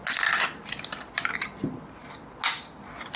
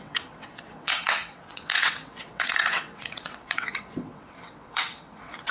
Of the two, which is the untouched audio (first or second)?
first